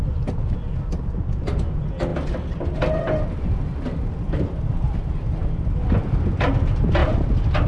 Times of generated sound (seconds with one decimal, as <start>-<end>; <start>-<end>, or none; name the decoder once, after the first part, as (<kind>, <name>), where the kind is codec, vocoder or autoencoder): none